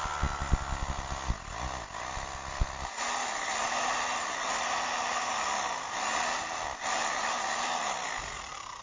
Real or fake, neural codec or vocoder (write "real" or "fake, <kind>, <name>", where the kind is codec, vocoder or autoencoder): real